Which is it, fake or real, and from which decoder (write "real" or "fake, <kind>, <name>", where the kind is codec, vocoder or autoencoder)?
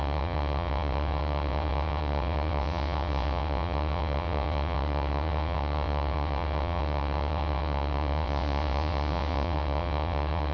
fake, vocoder, WaveNeXt